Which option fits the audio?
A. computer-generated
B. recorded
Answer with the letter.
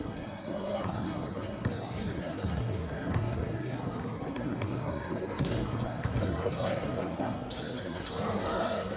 A